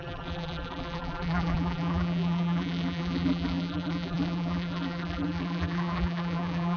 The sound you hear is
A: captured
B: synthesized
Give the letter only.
B